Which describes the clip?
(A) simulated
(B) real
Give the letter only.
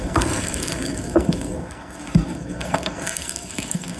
A